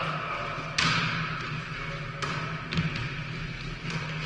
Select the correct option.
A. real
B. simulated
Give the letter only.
A